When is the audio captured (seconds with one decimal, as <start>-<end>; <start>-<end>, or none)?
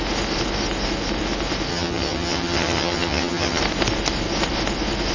0.0-1.7; 3.6-5.1